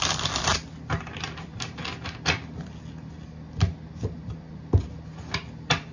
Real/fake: real